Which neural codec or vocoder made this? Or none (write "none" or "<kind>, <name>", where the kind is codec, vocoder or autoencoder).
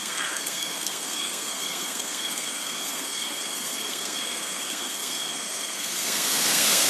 codec, SNAC